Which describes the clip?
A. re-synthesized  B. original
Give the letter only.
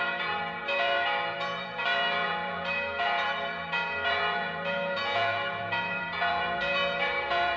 A